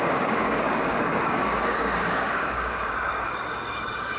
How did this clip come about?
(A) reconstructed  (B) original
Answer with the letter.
A